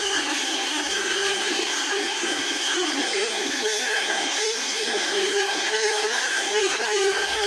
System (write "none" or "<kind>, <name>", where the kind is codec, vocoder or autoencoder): codec, SNAC